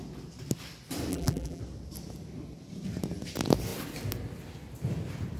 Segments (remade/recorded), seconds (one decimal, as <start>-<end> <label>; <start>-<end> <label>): 0.0-1.1 recorded; 1.1-1.6 remade; 1.6-5.4 recorded